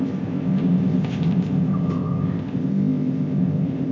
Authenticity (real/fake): fake